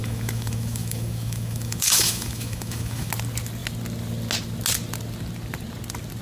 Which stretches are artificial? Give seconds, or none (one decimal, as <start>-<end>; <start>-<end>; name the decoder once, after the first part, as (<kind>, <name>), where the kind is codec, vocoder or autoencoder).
0.0-3.1 (autoencoder, DAC-VAE)